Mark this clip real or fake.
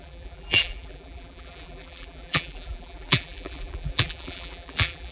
fake